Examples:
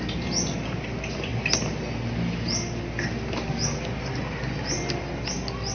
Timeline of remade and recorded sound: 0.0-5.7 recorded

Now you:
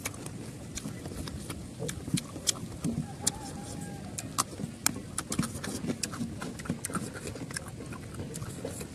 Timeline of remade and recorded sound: 0.0-8.9 recorded

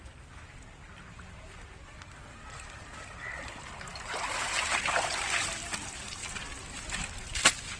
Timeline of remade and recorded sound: 0.0-7.8 recorded

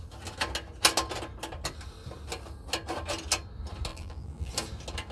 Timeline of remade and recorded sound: 0.0-3.9 recorded; 3.9-4.5 remade; 4.5-5.1 recorded

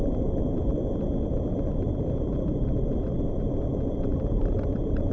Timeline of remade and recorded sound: 0.0-0.7 remade; 0.7-1.3 recorded; 1.3-5.1 remade

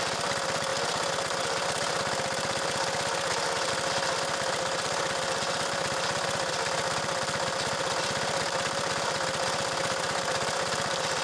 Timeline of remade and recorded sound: 0.0-11.2 remade

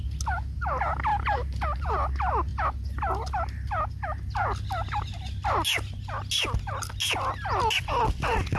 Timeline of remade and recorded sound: 0.0-1.1 recorded; 1.1-1.9 remade; 1.9-8.6 recorded

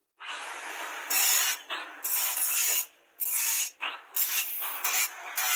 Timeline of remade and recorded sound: 0.0-5.6 recorded